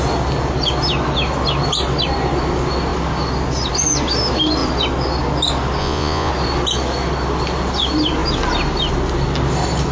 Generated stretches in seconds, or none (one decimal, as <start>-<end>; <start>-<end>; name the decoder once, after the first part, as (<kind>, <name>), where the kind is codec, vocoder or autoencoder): 5.8-6.3 (vocoder, Vocos)